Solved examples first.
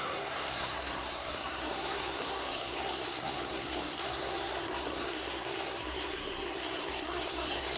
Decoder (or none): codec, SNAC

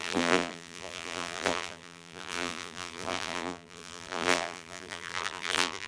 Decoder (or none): vocoder, BigVGAN v2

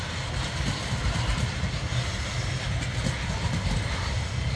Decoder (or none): none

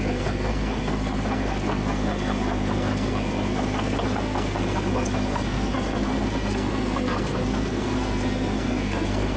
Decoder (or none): codec, SNAC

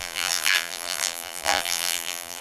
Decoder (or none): vocoder, BigVGAN v2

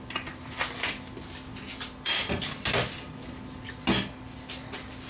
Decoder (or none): none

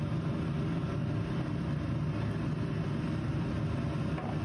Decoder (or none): none